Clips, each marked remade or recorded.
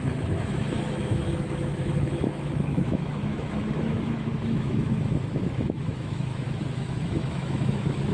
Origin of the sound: remade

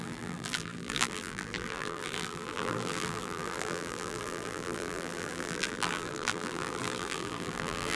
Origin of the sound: remade